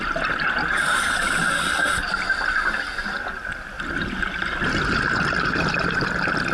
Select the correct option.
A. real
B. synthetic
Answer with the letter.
A